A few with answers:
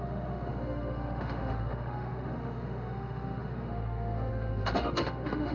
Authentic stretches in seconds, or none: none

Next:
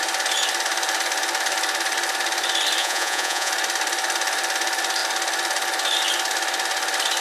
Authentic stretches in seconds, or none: 0.0-2.8; 3.5-7.2

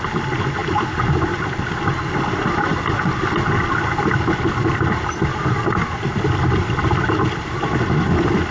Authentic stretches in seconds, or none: 0.0-8.5

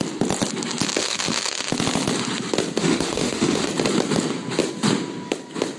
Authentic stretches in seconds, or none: 0.0-1.0; 1.7-2.8; 3.7-5.8

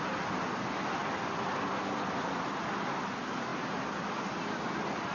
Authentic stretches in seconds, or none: 0.0-5.1

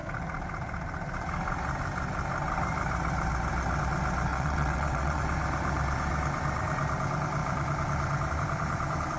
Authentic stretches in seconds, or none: 0.0-4.3; 5.2-9.2

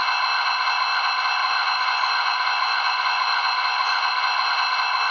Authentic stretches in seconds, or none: 0.0-1.4; 4.5-5.1

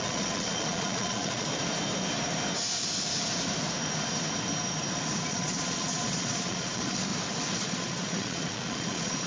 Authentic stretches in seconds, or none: 1.5-5.3; 7.1-7.6